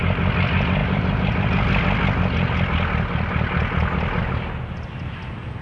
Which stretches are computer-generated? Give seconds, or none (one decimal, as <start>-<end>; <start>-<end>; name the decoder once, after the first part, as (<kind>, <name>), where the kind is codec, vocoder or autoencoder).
none